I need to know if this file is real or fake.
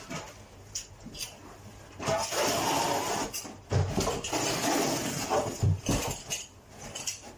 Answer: real